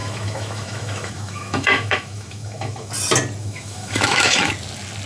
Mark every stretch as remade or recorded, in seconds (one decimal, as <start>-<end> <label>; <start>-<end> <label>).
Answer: 0.0-2.9 remade; 2.9-3.4 recorded; 3.4-4.5 remade; 4.5-5.1 recorded